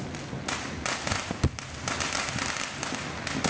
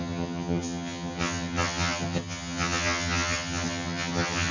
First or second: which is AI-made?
second